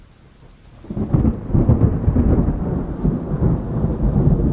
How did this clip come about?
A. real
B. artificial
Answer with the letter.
A